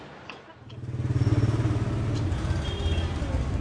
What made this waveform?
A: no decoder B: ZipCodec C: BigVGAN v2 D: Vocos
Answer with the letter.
A